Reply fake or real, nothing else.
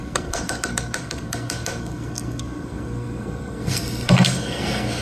fake